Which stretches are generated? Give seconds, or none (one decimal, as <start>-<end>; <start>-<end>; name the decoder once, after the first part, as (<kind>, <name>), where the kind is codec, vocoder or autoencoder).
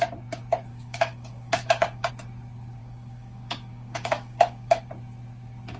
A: 0.7-2.1 (codec, DAC); 2.8-4.9